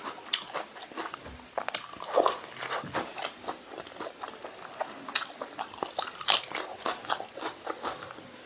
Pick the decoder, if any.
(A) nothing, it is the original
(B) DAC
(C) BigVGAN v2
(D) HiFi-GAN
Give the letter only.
A